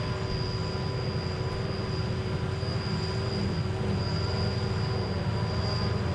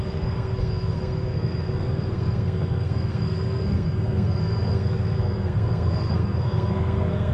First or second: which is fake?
second